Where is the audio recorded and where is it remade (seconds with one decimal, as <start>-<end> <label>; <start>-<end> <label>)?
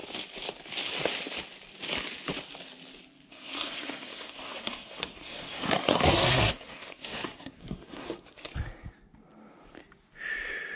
0.0-3.3 recorded; 3.3-8.5 remade; 8.5-10.8 recorded